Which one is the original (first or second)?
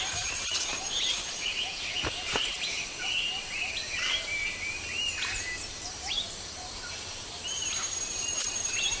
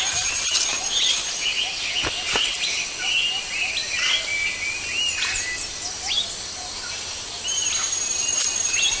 second